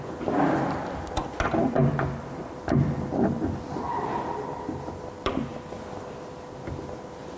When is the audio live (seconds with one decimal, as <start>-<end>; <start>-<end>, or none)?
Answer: 0.0-7.4